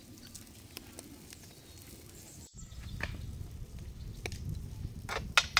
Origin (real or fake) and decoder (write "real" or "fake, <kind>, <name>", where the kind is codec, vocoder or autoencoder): real